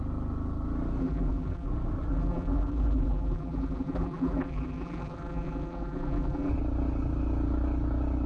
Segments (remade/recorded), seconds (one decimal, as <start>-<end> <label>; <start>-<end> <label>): 0.0-1.0 recorded; 1.0-1.7 remade; 1.7-2.1 recorded; 2.1-6.5 remade; 6.5-8.3 recorded